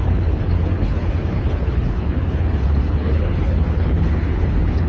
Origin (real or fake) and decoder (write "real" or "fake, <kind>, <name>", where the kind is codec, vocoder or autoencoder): fake, codec, HILCodec